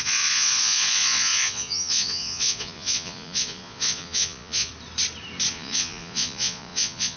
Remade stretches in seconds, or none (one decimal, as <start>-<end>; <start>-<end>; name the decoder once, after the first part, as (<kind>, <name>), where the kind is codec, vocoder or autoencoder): 0.0-4.7 (vocoder, Vocos); 5.5-7.2